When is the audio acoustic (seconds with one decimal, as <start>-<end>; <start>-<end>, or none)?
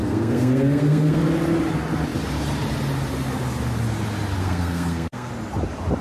1.2-4.4; 5.3-6.0